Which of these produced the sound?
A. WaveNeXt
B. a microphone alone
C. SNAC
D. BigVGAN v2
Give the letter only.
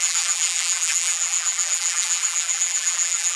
D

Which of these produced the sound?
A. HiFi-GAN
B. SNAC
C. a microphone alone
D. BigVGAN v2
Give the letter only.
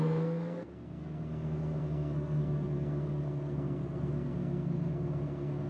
B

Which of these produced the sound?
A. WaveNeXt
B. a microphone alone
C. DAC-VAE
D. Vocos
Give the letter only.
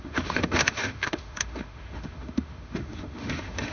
C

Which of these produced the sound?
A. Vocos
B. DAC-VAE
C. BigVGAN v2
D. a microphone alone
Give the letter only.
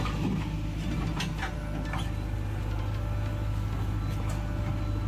D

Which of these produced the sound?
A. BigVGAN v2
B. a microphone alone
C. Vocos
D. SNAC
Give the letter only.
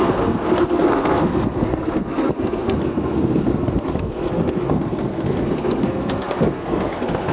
D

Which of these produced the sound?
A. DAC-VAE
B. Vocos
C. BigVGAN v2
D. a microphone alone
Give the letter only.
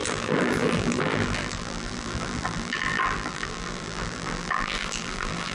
C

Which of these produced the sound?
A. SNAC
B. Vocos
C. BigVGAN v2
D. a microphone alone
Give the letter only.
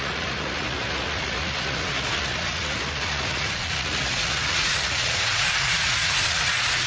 B